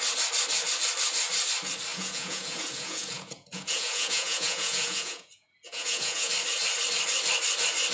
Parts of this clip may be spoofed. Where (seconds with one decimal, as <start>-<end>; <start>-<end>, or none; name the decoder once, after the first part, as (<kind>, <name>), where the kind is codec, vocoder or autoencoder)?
1.9-6.3 (vocoder, Vocos)